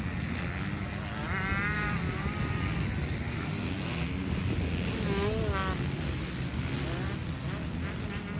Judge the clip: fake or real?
real